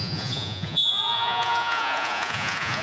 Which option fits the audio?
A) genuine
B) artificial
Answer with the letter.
B